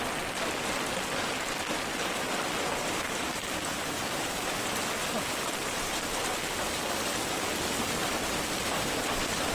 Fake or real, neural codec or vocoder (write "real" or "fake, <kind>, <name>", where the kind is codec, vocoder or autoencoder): real